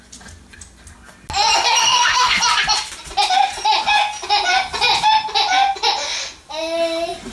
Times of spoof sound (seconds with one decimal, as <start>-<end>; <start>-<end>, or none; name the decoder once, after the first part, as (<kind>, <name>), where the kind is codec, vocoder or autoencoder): 1.8-2.4 (autoencoder, DAC-VAE)